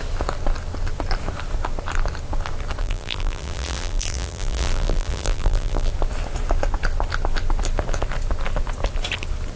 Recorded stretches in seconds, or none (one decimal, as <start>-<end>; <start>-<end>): 0.0-2.8; 5.9-9.6